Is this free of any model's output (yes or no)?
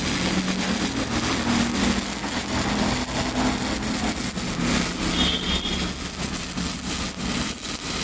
yes